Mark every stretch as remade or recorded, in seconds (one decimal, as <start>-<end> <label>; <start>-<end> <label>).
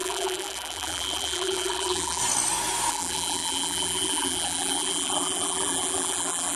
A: 0.0-2.2 remade; 2.2-2.9 recorded; 2.9-6.6 remade